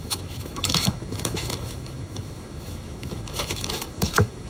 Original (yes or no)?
no